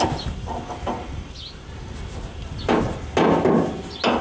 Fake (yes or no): no